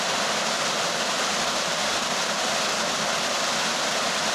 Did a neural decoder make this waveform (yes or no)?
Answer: no